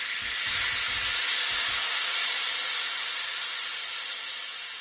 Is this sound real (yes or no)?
yes